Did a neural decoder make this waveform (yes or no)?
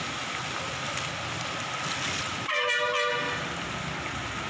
no